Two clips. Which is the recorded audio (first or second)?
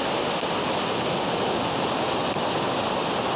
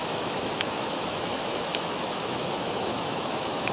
first